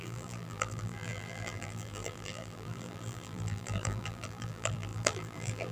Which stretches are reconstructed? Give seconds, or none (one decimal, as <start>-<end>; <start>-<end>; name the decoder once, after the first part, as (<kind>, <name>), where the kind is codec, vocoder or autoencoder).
0.0-5.7 (vocoder, BigVGAN v2)